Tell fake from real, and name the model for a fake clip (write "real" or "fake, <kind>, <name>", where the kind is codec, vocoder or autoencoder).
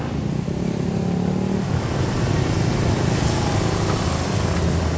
real